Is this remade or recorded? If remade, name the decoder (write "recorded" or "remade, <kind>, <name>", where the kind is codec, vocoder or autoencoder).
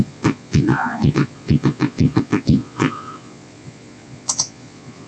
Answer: remade, vocoder, Vocos